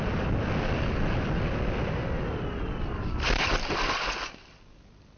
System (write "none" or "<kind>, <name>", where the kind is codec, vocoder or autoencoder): none